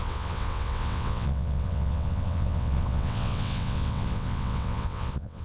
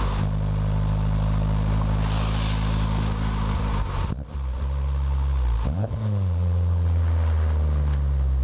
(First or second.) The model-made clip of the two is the first